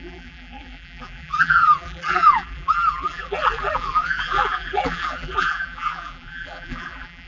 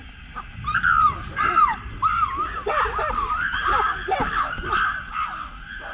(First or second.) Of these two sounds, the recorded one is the second